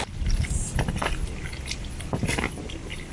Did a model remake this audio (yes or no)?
no